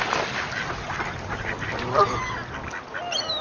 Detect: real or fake real